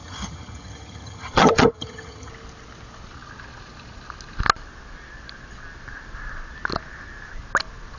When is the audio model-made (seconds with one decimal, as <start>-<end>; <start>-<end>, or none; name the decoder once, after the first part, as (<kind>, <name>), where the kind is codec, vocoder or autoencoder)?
0.0-2.3 (vocoder, HiFi-GAN)